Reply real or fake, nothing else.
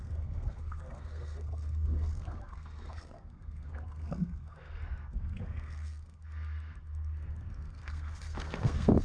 fake